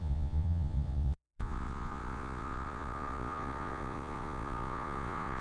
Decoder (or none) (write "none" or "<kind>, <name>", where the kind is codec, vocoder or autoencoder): vocoder, Vocos